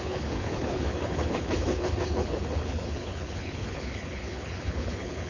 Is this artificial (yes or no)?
yes